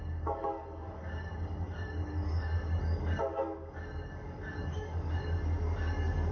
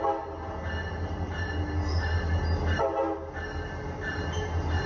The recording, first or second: second